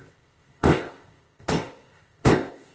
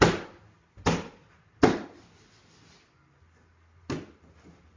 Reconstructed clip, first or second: first